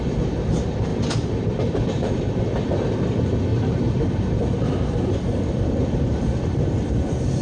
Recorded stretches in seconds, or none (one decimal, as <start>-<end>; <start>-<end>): 0.0-0.9; 2.3-3.5; 4.4-5.8; 6.8-7.4